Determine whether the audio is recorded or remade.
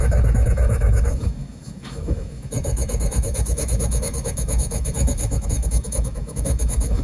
remade